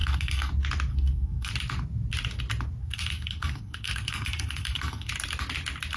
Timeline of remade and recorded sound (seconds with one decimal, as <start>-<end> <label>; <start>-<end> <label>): 0.0-0.5 remade; 0.5-0.9 recorded; 0.9-1.5 remade; 1.5-2.8 recorded; 2.8-5.1 remade; 5.1-6.0 recorded

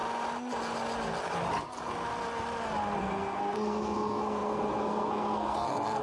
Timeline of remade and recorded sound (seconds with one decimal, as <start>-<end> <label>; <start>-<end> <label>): 0.0-3.0 recorded; 3.0-6.0 remade

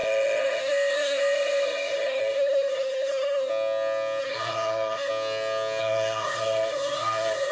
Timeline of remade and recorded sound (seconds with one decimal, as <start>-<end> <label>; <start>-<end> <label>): 0.0-3.5 remade; 3.5-4.2 recorded; 4.2-5.1 remade; 5.1-5.8 recorded; 5.8-7.5 remade

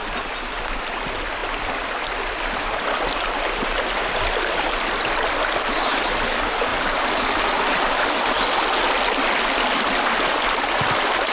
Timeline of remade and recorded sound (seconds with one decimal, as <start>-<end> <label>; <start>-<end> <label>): 0.0-11.3 recorded

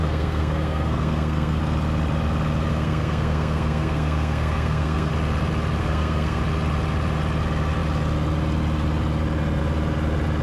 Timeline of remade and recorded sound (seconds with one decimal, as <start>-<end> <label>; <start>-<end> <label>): 0.0-1.6 remade; 1.6-2.7 recorded; 2.7-5.1 remade; 5.1-5.8 recorded; 5.8-6.4 remade; 6.4-10.4 recorded

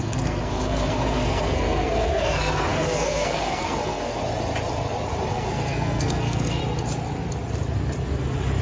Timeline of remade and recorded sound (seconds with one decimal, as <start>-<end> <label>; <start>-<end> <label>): 0.0-4.2 remade; 4.2-5.3 recorded; 5.3-6.6 remade; 6.6-8.6 recorded